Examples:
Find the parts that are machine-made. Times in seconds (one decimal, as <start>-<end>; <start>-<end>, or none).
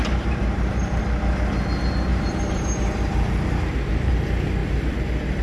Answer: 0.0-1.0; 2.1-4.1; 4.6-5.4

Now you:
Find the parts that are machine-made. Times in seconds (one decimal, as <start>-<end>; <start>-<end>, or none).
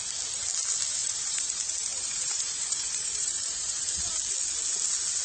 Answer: 1.0-4.1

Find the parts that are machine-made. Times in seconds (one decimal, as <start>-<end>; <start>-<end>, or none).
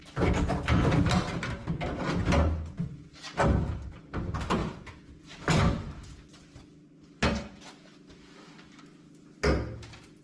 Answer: 4.6-8.8